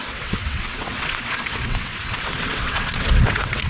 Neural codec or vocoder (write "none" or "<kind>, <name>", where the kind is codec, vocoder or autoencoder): vocoder, WaveNeXt